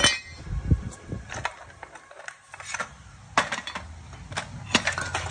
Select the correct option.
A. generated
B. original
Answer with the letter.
B